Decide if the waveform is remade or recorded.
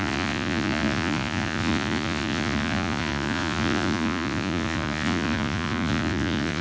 remade